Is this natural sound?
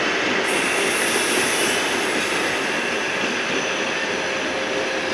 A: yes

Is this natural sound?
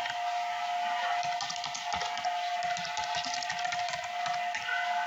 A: yes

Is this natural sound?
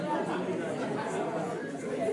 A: yes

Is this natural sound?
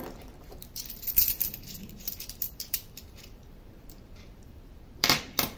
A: no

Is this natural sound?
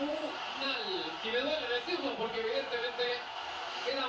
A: no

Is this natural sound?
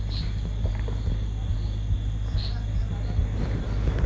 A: yes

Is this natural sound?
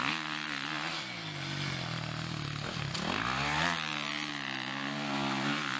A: yes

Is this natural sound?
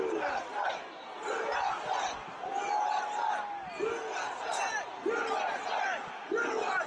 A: yes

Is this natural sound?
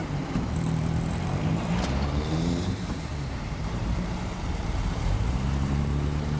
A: no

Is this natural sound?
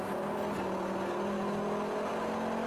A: yes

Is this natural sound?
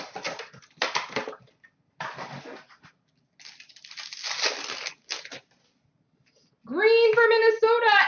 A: yes